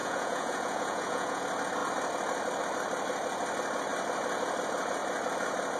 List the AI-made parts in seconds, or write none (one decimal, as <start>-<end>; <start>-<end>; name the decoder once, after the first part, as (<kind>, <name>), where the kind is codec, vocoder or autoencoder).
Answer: 0.0-1.4 (vocoder, Vocos)

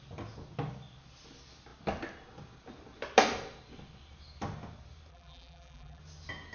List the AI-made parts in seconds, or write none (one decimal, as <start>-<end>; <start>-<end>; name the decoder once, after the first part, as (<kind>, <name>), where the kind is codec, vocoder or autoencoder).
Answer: 5.1-6.0 (vocoder, BigVGAN v2)

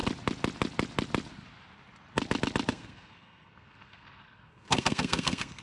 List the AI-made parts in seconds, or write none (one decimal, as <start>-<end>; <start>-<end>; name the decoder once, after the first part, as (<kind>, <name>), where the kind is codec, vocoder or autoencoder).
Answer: 2.7-5.6 (codec, SNAC)

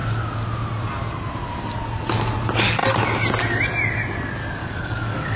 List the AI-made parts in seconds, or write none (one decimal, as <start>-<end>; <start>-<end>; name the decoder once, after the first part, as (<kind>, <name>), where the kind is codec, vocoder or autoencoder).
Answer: 4.6-5.4 (codec, DAC)

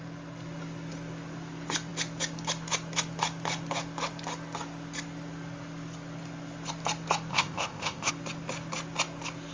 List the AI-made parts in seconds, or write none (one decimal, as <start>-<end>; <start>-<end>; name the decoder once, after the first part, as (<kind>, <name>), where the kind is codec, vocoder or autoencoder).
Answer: 7.3-8.1 (codec, ZipCodec)

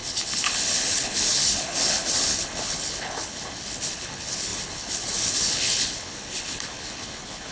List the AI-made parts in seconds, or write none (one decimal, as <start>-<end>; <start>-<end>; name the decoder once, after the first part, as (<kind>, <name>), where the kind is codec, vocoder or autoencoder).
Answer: 0.0-7.5 (codec, HILCodec)